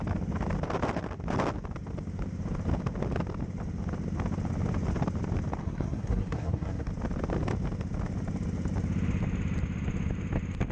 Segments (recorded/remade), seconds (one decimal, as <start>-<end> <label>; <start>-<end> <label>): 0.0-5.6 recorded; 5.6-6.9 remade; 6.9-10.7 recorded